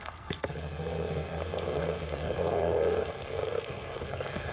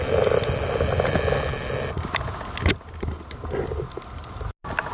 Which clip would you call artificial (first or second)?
first